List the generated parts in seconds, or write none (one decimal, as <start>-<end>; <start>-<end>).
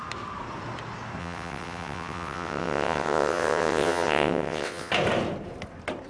1.2-4.9